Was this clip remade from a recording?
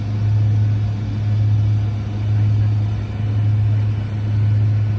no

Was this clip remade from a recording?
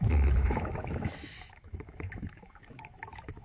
yes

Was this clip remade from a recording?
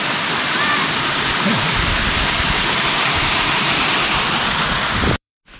yes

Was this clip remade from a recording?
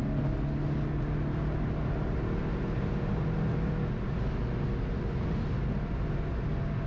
no